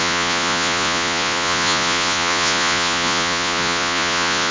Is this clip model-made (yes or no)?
yes